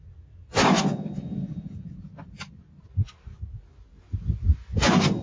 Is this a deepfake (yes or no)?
no